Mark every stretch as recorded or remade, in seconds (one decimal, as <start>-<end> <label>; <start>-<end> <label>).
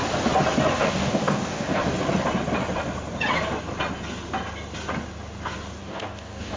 0.0-0.7 recorded; 0.7-1.8 remade; 1.8-5.8 recorded; 5.8-6.6 remade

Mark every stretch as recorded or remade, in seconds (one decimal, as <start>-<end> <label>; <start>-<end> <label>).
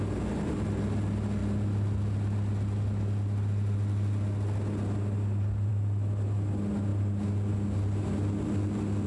0.0-9.1 recorded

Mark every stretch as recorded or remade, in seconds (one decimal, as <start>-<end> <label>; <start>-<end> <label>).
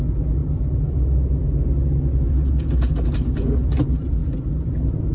0.0-5.1 recorded